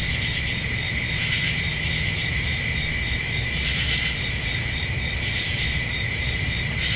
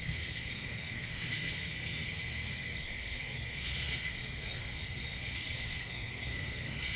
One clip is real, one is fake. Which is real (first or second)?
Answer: first